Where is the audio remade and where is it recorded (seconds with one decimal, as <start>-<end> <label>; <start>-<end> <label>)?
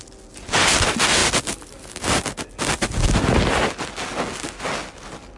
0.0-5.4 recorded